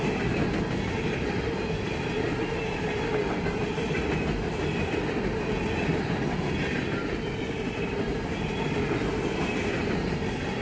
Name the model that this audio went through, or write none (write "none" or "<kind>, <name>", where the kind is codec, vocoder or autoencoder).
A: none